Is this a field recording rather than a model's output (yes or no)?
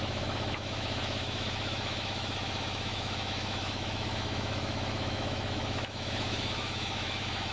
no